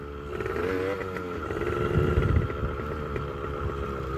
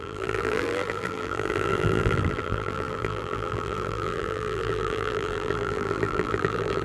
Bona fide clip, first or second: first